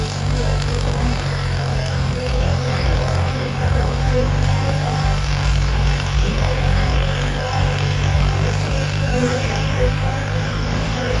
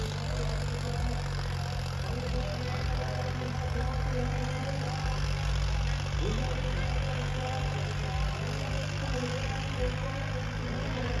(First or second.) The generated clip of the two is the first